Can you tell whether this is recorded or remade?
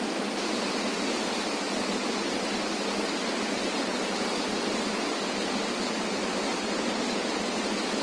recorded